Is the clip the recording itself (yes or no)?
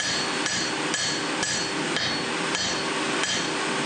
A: yes